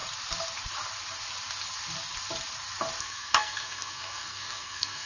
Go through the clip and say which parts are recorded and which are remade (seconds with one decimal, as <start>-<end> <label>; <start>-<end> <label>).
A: 0.0-3.0 recorded; 3.0-5.1 remade

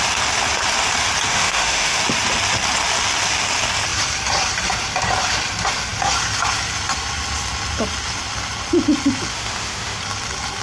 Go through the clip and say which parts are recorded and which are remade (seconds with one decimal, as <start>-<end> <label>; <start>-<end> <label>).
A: 0.0-1.3 recorded; 1.3-2.0 remade; 2.0-9.3 recorded; 9.3-10.0 remade; 10.0-10.6 recorded

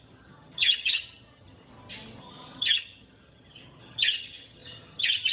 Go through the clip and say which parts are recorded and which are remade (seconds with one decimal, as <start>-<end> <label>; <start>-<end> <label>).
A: 0.0-1.7 remade; 1.7-2.2 recorded; 2.2-5.3 remade

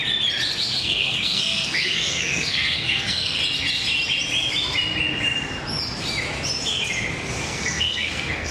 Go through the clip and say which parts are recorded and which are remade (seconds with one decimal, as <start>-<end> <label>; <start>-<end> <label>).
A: 0.0-0.8 recorded; 0.8-3.4 remade; 3.4-7.4 recorded; 7.4-8.5 remade

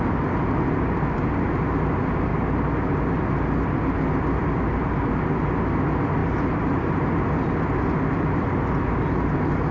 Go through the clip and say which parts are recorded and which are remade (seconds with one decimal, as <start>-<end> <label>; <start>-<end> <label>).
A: 0.0-9.7 recorded

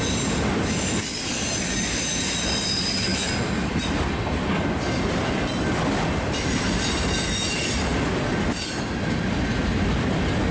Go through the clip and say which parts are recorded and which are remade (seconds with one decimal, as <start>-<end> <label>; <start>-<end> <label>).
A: 0.0-10.5 recorded

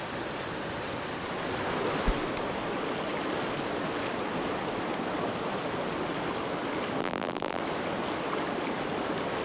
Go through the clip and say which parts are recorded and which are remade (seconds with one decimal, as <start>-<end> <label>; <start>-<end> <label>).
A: 0.0-7.0 recorded; 7.0-7.6 remade; 7.6-9.4 recorded

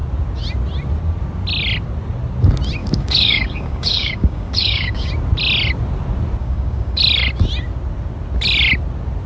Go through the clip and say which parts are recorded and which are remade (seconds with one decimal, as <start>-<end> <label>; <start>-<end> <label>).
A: 0.0-2.8 recorded; 2.8-5.1 remade; 5.1-6.4 recorded; 6.4-7.0 remade; 7.0-9.3 recorded